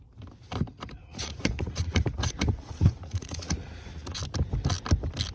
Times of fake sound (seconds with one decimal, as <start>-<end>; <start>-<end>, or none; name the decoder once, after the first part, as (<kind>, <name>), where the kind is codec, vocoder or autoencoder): 1.0-4.2 (vocoder, Vocos)